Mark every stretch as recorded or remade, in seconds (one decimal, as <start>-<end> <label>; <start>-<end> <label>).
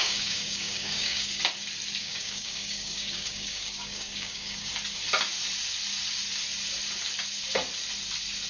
0.0-1.4 remade; 1.4-2.0 recorded; 2.0-4.7 remade; 4.7-8.5 recorded